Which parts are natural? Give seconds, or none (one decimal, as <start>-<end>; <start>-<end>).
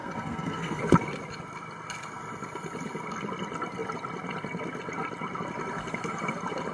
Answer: 0.8-6.7